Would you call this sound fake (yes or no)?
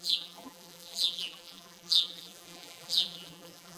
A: yes